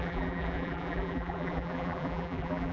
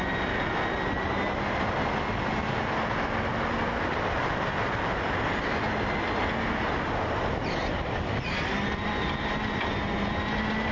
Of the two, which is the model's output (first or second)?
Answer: first